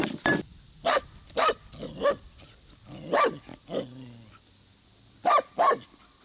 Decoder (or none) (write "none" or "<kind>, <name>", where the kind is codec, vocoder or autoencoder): none